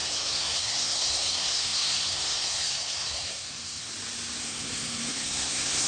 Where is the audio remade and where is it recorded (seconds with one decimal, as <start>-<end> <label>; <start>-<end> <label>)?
0.0-3.9 remade; 3.9-4.4 recorded; 4.4-5.9 remade